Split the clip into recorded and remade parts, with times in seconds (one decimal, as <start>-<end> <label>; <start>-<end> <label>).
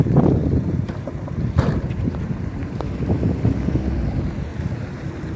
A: 0.0-5.4 remade